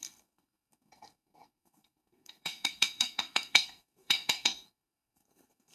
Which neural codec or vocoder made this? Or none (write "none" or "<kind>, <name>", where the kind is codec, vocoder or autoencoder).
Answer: codec, SNAC